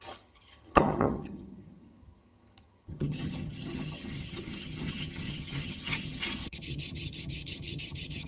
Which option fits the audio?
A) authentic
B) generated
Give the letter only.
B